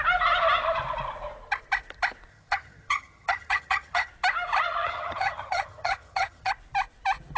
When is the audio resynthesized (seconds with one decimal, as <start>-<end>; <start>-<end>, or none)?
2.3-4.1; 4.8-6.5